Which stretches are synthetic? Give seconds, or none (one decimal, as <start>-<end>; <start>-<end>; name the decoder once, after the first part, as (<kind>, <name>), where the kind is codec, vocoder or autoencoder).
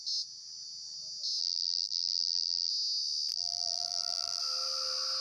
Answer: 1.4-2.7 (vocoder, BigVGAN v2); 3.3-4.4